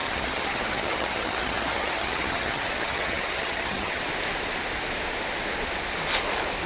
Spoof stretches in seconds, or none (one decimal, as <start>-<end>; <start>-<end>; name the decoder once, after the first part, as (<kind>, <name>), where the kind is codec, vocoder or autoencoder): 0.0-4.0 (vocoder, HiFi-GAN)